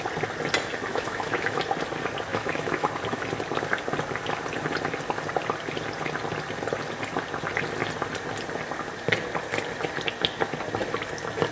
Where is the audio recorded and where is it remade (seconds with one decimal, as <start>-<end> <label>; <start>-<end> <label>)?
0.0-0.9 recorded; 0.9-1.6 remade; 1.6-2.3 recorded; 2.3-2.9 remade; 2.9-11.5 recorded